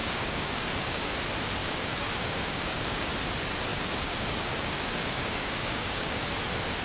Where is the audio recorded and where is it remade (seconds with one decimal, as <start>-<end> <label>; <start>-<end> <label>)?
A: 0.0-1.1 remade; 1.1-1.6 recorded; 1.6-3.1 remade; 3.1-3.7 recorded; 3.7-6.2 remade; 6.2-6.8 recorded